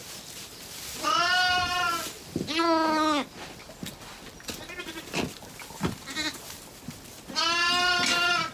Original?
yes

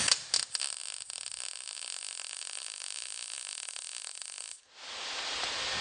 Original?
yes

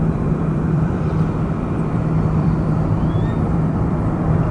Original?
no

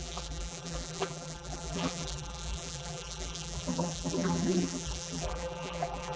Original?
no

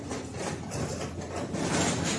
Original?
yes